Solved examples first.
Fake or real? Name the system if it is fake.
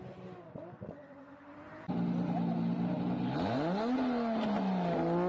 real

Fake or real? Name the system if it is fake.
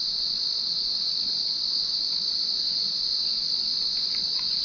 real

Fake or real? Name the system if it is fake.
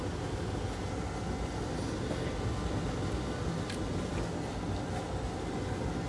real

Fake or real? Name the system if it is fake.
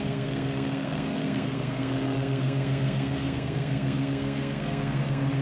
fake, codec, SNAC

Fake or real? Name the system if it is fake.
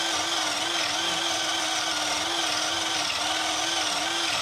real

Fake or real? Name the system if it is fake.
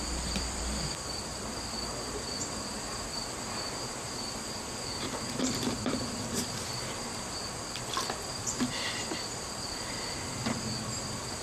fake, vocoder, BigVGAN v2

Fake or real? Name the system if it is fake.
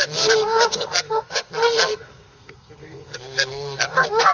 fake, codec, SNAC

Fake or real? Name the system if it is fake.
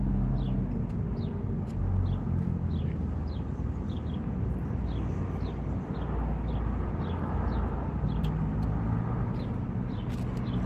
real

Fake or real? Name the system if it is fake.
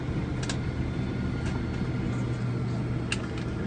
real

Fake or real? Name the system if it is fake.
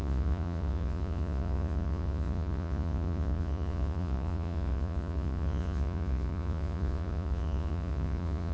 fake, vocoder, Vocos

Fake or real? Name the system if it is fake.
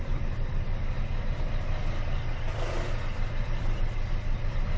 real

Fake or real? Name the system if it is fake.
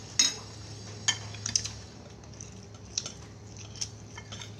real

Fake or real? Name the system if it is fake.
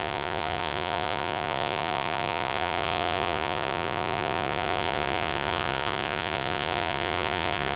fake, vocoder, Vocos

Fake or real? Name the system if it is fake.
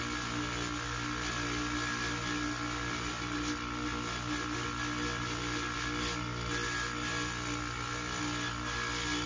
real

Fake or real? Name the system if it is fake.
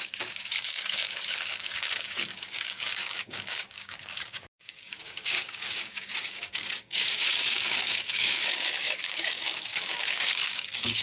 fake, codec, DAC